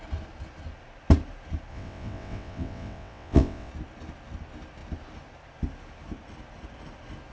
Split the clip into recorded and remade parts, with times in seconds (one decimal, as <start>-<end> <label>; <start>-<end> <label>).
0.0-1.7 recorded; 1.7-3.7 remade; 3.7-7.3 recorded